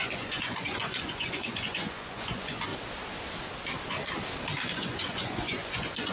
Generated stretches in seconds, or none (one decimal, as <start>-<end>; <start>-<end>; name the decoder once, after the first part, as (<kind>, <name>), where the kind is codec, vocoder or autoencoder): 0.0-2.7 (vocoder, Vocos); 4.6-6.1